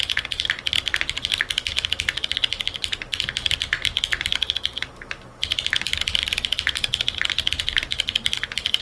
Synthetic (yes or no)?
no